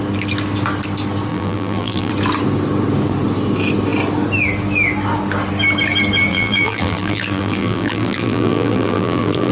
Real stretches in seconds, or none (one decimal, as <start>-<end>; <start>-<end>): 0.0-1.3; 2.1-6.3